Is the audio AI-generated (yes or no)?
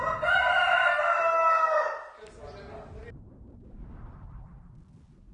no